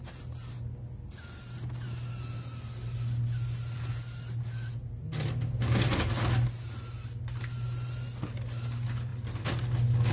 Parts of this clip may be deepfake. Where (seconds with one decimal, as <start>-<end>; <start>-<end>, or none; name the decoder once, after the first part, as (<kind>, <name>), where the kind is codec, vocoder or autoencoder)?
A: none